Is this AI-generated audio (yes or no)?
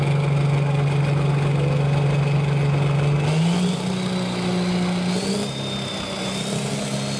no